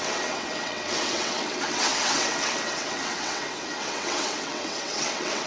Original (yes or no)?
no